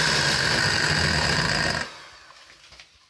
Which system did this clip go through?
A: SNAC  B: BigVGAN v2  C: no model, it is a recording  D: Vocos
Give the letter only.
C